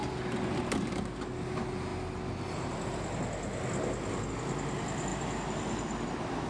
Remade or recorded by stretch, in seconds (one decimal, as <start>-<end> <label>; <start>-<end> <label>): 0.0-5.1 recorded; 5.1-6.5 remade